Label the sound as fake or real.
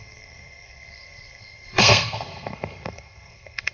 fake